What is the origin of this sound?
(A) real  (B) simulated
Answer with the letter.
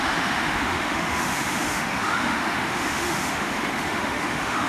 B